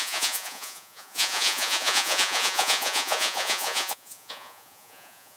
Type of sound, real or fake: fake